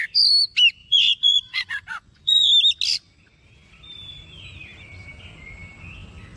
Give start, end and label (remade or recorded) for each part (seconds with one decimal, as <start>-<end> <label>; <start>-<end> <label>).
0.0-0.8 recorded; 0.8-2.5 remade; 2.5-6.4 recorded